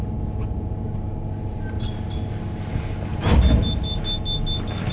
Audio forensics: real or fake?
real